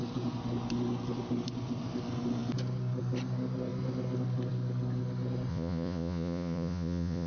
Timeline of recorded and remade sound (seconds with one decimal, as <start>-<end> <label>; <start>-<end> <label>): 0.0-5.5 recorded; 5.5-7.3 remade